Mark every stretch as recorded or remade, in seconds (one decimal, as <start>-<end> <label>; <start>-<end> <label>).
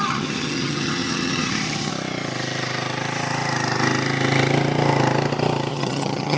0.0-1.9 remade; 1.9-5.7 recorded; 5.7-6.4 remade